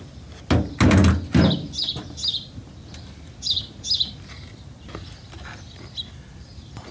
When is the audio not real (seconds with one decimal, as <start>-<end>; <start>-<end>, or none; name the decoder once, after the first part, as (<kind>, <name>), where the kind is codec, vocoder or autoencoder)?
none